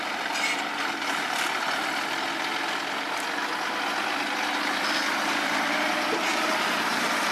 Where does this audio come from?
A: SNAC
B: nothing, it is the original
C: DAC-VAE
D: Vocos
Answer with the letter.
B